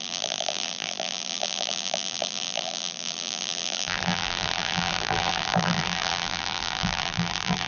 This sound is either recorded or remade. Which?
remade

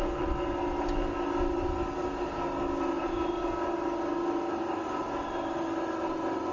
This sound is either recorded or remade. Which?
recorded